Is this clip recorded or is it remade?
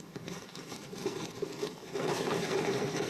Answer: remade